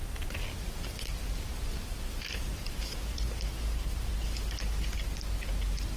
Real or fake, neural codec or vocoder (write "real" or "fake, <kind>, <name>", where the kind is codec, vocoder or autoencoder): real